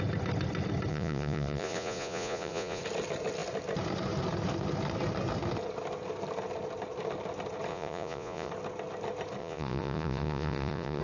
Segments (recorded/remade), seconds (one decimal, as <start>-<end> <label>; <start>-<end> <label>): 0.0-0.9 recorded; 0.9-2.8 remade; 2.8-7.7 recorded; 7.7-8.5 remade; 8.5-9.4 recorded; 9.4-11.0 remade